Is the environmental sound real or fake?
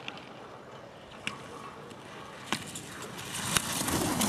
real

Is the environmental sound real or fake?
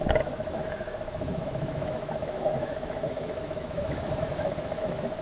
fake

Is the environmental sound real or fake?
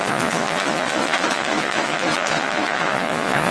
fake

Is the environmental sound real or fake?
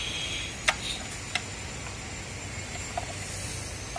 real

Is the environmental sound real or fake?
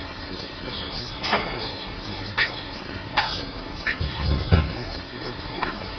fake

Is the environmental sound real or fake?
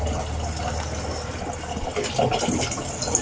real